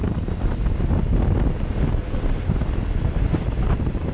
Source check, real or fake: real